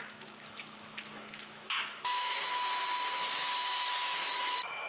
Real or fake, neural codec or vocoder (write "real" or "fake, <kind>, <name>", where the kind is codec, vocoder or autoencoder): fake, autoencoder, DAC-VAE